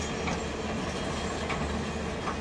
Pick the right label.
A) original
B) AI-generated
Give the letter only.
A